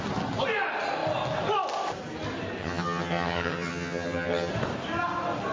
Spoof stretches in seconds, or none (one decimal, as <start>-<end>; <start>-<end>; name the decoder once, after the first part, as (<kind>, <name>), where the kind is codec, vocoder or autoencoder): 2.6-4.5 (vocoder, HiFi-GAN)